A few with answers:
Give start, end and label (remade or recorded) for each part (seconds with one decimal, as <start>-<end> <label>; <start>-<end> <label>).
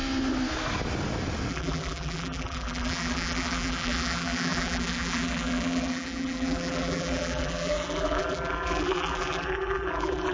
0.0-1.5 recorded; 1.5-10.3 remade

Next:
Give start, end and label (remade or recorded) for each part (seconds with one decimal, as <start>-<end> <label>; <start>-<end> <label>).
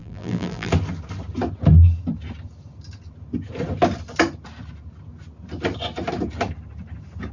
0.0-0.7 remade; 0.7-7.3 recorded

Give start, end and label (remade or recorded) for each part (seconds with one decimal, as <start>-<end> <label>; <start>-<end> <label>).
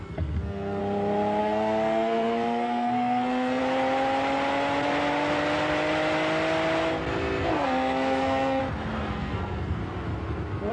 0.0-0.8 remade; 0.8-1.4 recorded; 1.4-3.6 remade; 3.6-7.5 recorded; 7.5-8.6 remade; 8.6-9.1 recorded; 9.1-9.8 remade; 9.8-10.7 recorded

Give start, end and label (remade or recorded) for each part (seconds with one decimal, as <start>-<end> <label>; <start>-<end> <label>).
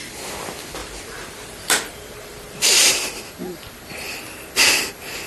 0.0-0.8 recorded; 0.8-2.7 remade; 2.7-5.3 recorded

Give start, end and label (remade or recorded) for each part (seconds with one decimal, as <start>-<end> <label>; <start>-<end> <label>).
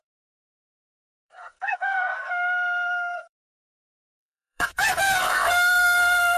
0.0-6.4 remade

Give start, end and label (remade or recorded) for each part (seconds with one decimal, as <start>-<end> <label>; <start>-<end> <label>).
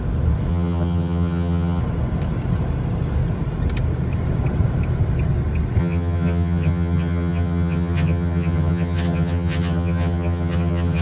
0.0-0.5 recorded; 0.5-1.8 remade; 1.8-5.8 recorded; 5.8-11.0 remade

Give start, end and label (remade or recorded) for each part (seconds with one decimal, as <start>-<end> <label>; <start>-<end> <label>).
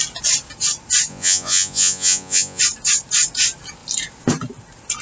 0.0-1.1 recorded; 1.1-2.6 remade; 2.6-5.0 recorded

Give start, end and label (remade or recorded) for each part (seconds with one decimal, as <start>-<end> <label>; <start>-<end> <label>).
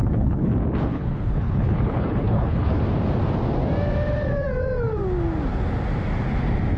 0.0-0.5 remade; 0.5-0.9 recorded; 0.9-2.8 remade; 2.8-6.8 recorded